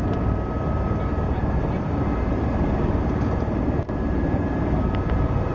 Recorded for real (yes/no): yes